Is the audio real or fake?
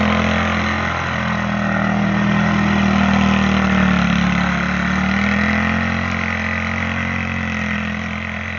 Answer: real